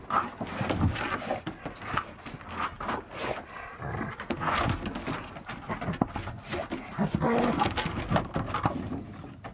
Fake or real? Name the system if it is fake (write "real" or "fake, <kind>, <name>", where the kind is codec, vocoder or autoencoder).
real